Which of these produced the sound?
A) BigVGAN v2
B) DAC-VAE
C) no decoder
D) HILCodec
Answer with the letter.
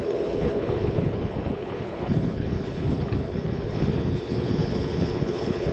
D